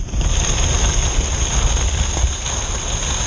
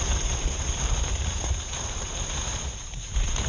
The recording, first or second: first